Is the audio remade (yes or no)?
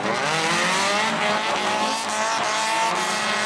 no